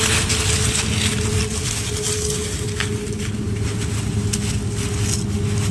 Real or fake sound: real